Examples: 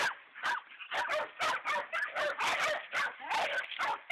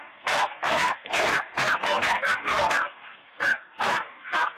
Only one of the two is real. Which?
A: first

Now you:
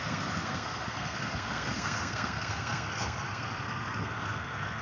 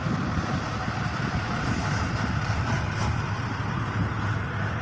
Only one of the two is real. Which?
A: second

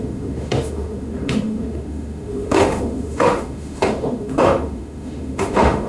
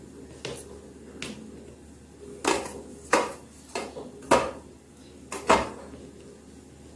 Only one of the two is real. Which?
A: second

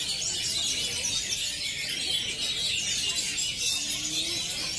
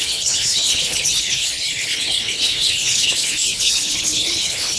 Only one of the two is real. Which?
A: first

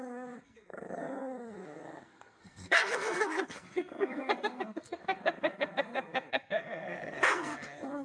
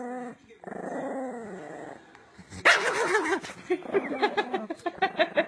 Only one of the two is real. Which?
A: second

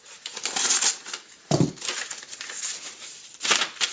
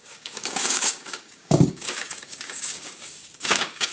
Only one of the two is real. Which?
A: first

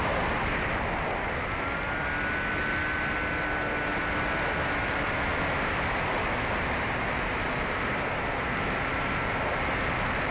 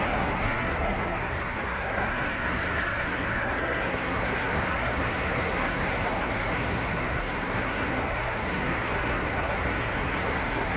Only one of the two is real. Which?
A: first